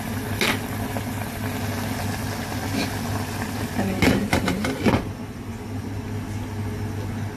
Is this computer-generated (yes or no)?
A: no